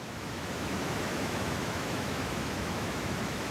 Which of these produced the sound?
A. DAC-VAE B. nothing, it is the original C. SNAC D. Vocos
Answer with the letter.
A